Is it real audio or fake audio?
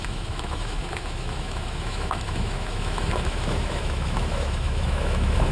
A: fake